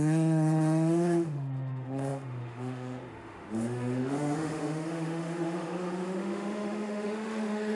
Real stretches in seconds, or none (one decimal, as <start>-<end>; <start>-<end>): none